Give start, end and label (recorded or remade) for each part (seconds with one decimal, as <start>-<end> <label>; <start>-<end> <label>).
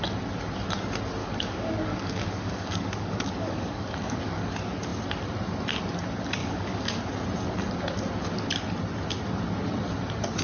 0.0-1.2 recorded; 1.2-4.5 remade; 4.5-6.4 recorded; 6.4-7.0 remade; 7.0-10.4 recorded